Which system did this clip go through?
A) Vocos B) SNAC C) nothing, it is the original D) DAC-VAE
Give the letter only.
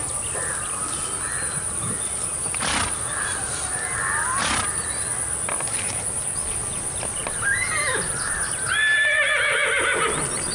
C